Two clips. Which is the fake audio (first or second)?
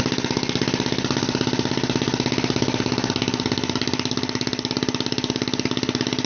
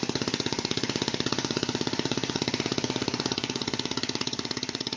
second